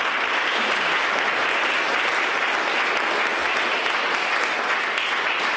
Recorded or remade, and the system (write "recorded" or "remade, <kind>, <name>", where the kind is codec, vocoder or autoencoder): recorded